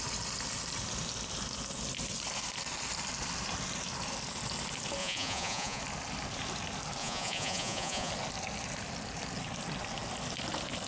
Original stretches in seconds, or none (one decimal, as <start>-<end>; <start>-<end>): 0.0-5.0; 5.8-7.0; 8.1-10.9